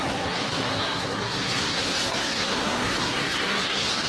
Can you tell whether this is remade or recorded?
remade